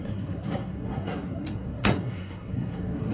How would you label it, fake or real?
fake